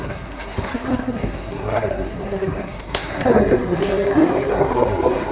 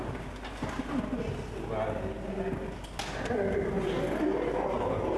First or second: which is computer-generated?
first